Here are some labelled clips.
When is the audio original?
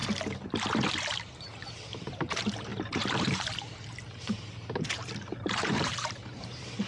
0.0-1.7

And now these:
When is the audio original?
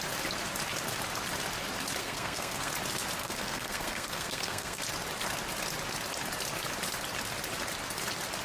0.0-2.0; 2.7-3.2; 4.8-8.4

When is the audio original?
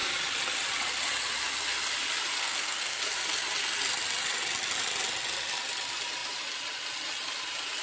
0.0-2.4; 3.0-7.8